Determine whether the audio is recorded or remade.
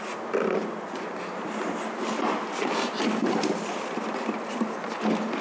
recorded